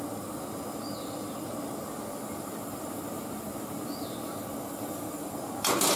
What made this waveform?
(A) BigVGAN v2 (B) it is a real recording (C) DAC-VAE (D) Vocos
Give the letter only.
B